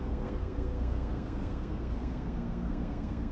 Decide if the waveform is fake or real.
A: fake